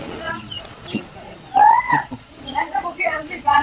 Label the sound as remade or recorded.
remade